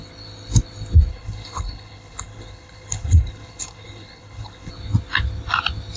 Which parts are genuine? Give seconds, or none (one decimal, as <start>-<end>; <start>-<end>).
0.0-1.1; 4.7-6.0